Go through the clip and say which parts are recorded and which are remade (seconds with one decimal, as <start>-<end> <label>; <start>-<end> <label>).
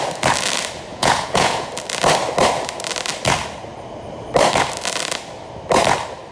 0.0-0.9 recorded; 0.9-1.7 remade; 1.7-6.3 recorded